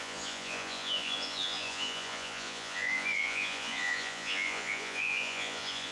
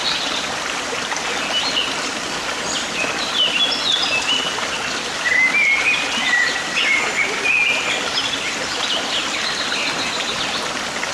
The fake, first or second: first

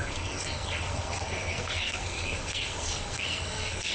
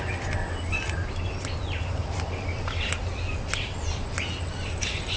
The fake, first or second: first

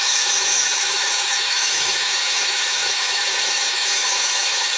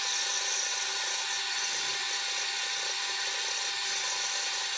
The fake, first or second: first